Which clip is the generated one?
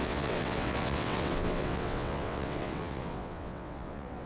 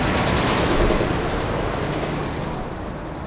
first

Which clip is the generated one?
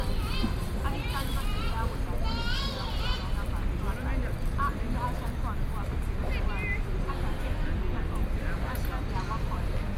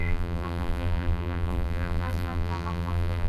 second